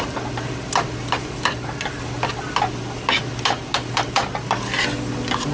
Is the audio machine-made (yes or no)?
no